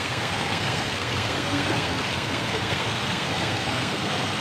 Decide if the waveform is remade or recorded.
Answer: remade